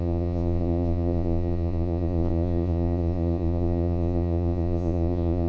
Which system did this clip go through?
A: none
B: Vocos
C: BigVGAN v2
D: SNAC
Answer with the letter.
B